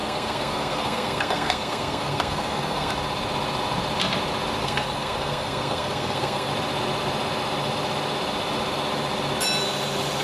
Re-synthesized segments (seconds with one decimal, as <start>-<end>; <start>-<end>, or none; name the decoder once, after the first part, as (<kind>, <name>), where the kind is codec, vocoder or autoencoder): 0.0-2.9 (codec, SNAC); 4.6-6.5